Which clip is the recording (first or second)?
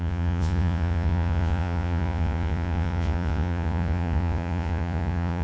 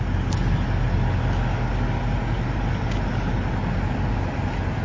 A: second